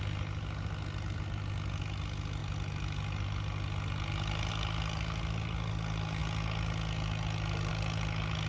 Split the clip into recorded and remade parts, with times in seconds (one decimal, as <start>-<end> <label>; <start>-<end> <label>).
0.0-8.5 recorded